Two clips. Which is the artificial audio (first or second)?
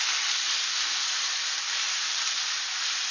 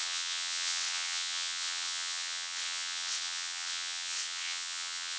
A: second